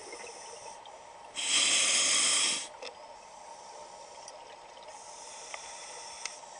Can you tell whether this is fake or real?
real